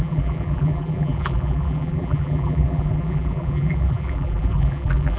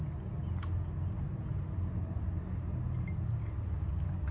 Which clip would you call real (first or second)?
second